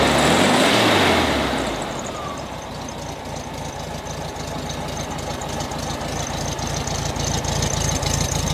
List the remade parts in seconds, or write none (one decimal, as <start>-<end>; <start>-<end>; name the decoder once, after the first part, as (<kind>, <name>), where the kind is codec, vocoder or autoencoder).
none